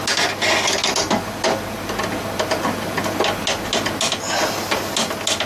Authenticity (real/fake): real